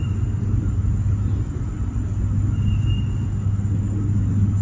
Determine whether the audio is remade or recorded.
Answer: recorded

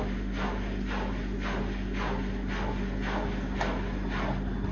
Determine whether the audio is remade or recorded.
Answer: recorded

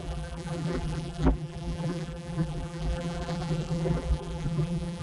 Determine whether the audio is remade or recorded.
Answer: remade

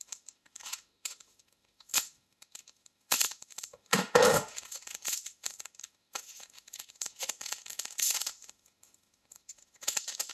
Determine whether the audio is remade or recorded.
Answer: remade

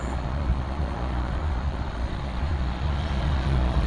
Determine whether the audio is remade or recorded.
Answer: remade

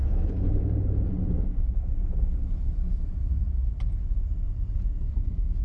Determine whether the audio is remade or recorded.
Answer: remade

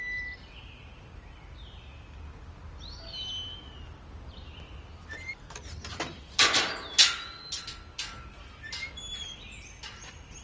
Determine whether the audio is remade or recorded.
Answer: recorded